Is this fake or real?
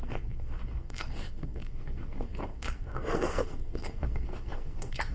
fake